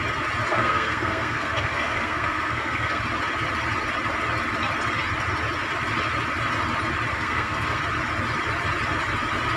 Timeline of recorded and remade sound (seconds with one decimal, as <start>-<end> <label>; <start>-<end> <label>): 0.0-0.5 recorded; 0.5-3.0 remade; 3.0-7.1 recorded; 7.1-7.8 remade; 7.8-9.6 recorded